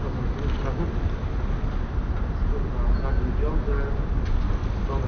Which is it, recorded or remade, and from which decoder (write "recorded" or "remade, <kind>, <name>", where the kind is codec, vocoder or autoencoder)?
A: recorded